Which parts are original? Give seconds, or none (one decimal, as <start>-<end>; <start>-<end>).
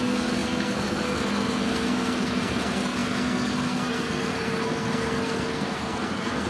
none